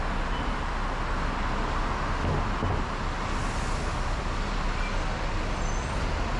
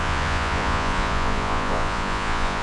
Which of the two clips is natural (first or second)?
first